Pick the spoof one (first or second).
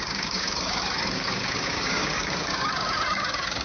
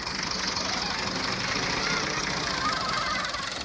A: first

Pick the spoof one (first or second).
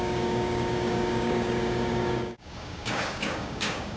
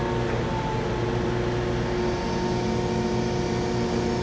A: first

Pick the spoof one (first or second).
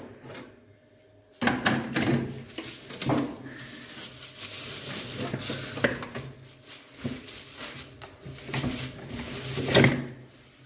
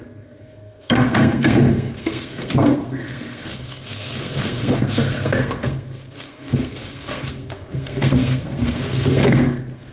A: second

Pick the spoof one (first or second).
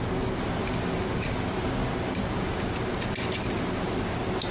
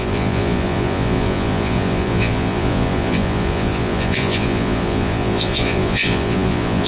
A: second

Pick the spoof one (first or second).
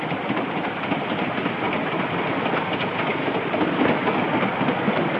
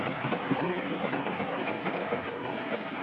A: second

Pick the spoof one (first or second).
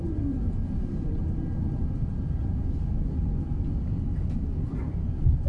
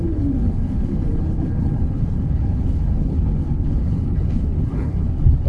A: second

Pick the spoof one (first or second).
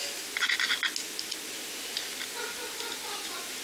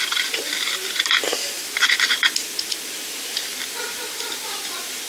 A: second